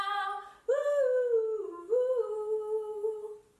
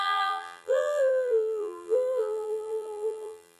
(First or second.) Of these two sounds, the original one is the first